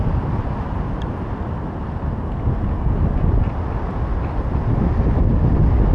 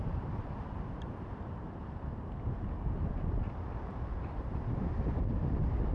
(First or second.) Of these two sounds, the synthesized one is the second